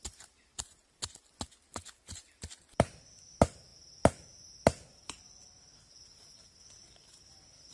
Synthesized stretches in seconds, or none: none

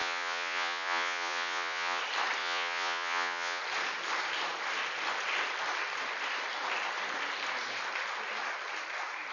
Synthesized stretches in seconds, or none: 0.0-2.0 (vocoder, Vocos); 2.4-3.6

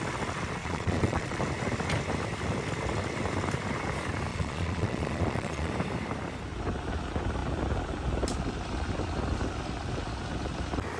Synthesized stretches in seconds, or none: 0.6-1.4 (vocoder, Vocos); 4.3-5.7

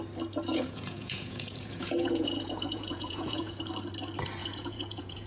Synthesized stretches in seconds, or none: 0.5-3.7 (vocoder, Vocos); 4.4-5.3

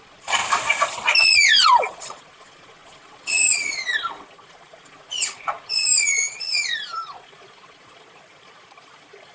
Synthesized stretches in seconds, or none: 0.0-0.4 (vocoder, Vocos); 1.2-9.3

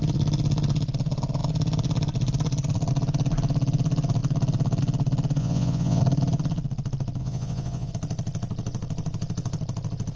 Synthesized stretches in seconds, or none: 5.4-6.0 (vocoder, Vocos); 7.2-7.9